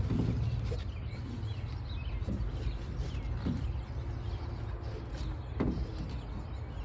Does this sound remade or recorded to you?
recorded